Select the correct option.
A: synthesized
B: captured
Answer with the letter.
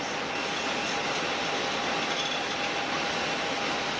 B